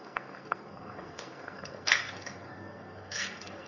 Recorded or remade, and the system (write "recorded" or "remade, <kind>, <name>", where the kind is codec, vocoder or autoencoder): remade, codec, SNAC